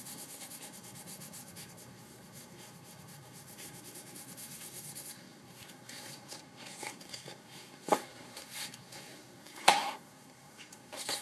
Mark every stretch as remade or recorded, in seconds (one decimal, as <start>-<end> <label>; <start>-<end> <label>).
0.0-11.2 remade

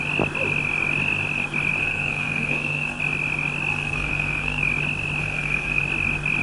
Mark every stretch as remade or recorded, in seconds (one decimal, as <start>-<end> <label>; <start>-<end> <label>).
0.0-1.8 recorded; 1.8-3.0 remade; 3.0-3.7 recorded; 3.7-4.6 remade; 4.6-5.2 recorded; 5.2-5.8 remade; 5.8-6.4 recorded

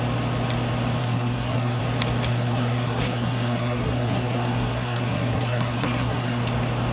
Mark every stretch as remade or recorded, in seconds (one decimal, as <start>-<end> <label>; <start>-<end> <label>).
0.0-1.0 recorded; 1.0-1.8 remade; 1.8-2.3 recorded; 2.3-6.4 remade; 6.4-6.9 recorded

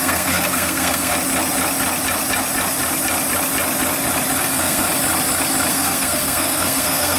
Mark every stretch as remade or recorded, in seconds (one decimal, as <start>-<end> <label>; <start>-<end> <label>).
0.0-1.1 remade; 1.1-4.4 recorded; 4.4-4.9 remade; 4.9-5.7 recorded; 5.7-7.2 remade

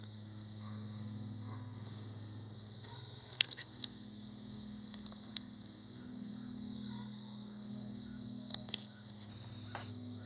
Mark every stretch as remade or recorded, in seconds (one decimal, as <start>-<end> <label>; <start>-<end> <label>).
0.0-9.3 remade; 9.3-9.9 recorded; 9.9-10.3 remade